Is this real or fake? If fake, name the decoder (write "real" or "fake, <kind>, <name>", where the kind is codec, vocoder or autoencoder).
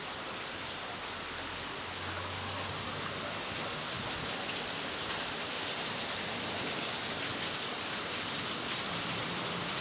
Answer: real